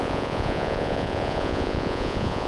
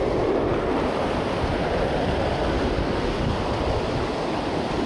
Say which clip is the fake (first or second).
first